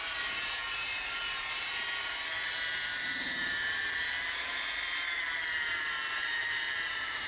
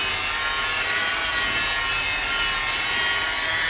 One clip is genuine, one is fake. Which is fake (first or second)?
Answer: first